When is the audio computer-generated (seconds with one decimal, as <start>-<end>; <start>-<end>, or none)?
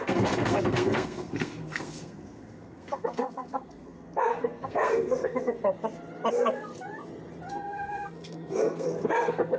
0.0-5.6; 6.3-6.7; 7.5-9.6